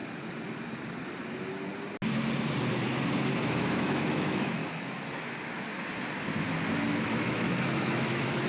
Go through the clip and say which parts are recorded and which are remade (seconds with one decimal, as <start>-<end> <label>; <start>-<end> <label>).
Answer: 0.0-3.4 recorded; 3.4-4.6 remade; 4.6-7.0 recorded; 7.0-8.5 remade